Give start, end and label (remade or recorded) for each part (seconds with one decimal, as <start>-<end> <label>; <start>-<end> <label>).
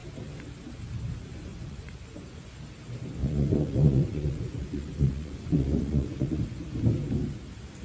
0.0-1.5 recorded; 1.5-2.4 remade; 2.4-3.2 recorded; 3.2-6.4 remade; 6.4-7.8 recorded